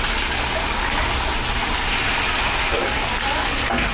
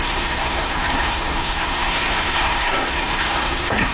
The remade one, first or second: second